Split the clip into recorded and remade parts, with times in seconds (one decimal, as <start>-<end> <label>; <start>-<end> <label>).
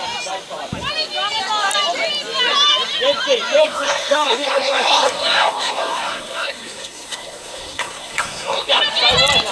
0.0-3.6 recorded; 3.6-8.8 remade; 8.8-9.5 recorded